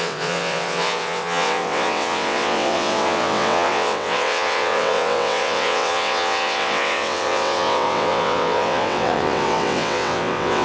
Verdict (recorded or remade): remade